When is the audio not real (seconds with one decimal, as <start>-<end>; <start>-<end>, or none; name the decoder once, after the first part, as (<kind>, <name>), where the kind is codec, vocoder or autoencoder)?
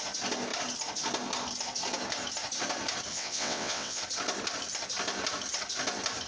3.1-4.0 (vocoder, WaveNeXt)